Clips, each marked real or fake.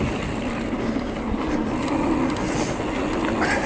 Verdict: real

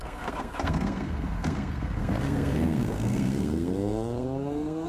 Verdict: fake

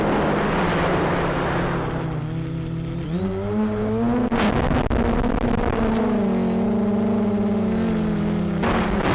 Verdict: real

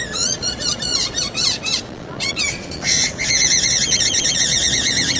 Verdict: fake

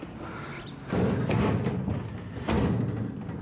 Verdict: real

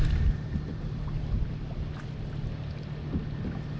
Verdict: real